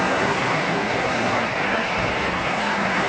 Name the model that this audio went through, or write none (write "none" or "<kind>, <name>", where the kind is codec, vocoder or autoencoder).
codec, SNAC